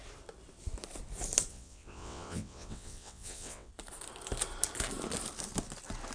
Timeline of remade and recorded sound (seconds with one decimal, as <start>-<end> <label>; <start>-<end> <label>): 0.0-1.5 recorded; 1.5-3.7 remade; 3.7-6.1 recorded